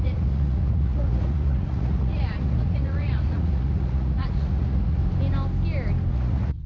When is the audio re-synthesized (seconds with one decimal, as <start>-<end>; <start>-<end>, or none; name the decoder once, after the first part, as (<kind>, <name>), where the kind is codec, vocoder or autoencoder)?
0.0-5.0 (vocoder, Vocos); 6.1-6.7